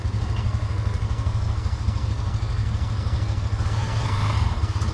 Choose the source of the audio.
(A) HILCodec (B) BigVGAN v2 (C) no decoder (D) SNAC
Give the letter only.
D